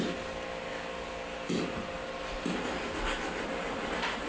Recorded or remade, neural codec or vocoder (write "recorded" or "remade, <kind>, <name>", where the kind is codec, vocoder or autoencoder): recorded